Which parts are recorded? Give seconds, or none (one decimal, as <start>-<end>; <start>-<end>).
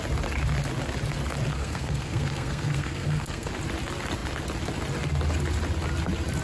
0.0-1.5; 3.5-6.4